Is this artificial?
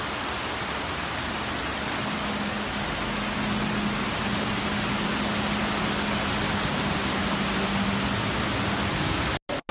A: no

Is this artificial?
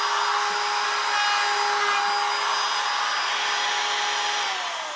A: no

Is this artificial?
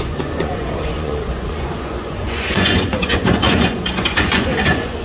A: yes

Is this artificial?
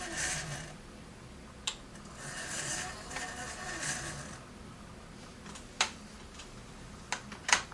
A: no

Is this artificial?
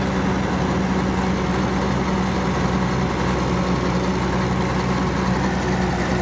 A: no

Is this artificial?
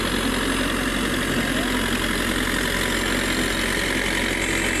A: no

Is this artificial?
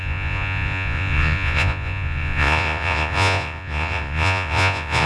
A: yes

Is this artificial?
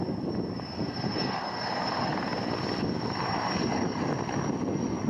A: no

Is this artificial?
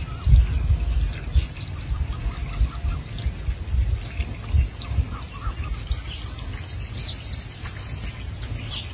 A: no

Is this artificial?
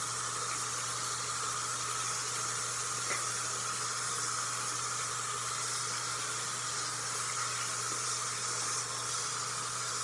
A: no